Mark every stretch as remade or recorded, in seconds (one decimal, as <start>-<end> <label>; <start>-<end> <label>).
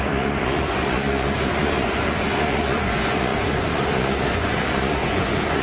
0.0-5.6 remade